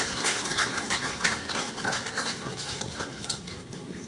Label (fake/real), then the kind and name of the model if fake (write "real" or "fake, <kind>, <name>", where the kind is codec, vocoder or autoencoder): fake, codec, SNAC